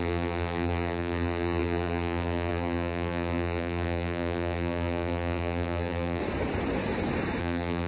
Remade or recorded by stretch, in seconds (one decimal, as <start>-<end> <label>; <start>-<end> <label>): 0.0-6.2 remade; 6.2-7.4 recorded; 7.4-7.9 remade